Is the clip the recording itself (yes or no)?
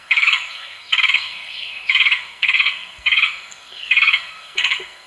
no